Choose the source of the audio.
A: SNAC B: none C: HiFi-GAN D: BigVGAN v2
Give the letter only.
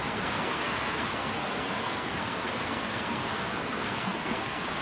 A